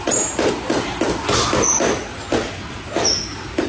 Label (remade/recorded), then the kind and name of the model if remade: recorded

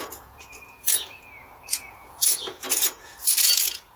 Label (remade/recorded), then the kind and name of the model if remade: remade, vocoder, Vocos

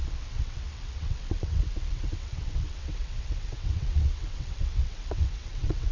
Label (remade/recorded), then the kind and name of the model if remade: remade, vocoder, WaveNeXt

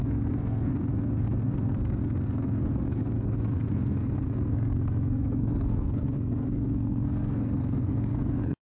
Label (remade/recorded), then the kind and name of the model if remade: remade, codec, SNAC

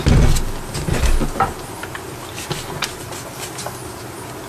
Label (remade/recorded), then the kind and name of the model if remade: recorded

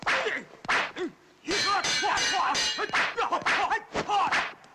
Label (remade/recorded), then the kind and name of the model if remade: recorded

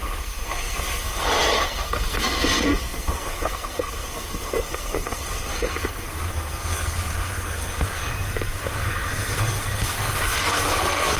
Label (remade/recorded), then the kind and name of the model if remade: remade, codec, SNAC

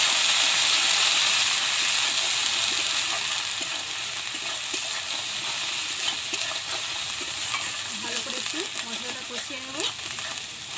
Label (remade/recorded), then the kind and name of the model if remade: recorded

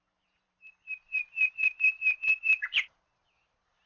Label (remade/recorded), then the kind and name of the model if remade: remade, vocoder, BigVGAN v2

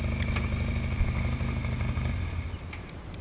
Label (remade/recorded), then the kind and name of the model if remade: recorded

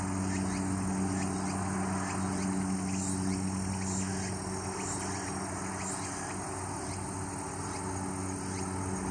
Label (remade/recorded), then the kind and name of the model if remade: recorded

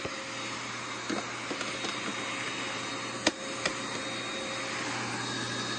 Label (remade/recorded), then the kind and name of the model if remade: recorded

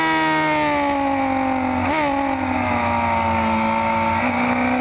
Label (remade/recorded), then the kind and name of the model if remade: recorded